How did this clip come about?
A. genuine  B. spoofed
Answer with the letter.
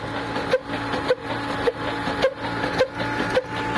A